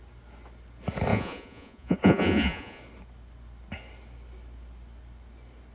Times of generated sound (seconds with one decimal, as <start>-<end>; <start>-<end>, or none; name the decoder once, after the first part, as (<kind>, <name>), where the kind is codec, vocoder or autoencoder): 1.1-2.8 (vocoder, Vocos)